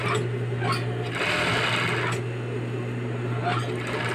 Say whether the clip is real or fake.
real